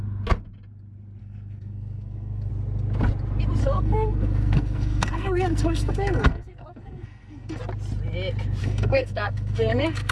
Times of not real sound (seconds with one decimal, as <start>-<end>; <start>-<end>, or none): 1.2-2.5; 3.6-7.6; 8.6-10.1